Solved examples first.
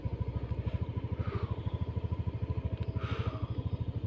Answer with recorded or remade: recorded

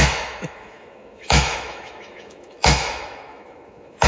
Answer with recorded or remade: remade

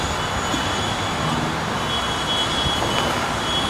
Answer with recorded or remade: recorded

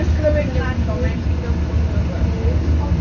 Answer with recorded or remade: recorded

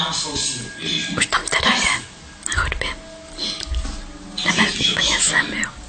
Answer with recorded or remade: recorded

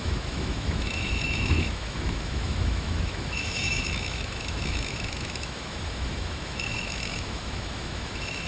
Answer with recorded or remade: remade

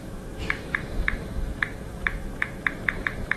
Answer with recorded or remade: remade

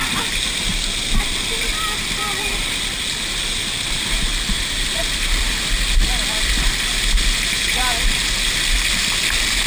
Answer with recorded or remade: recorded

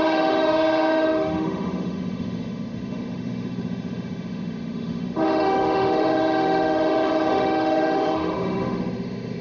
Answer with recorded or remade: remade